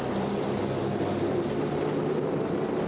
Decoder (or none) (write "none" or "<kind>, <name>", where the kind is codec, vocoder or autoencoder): none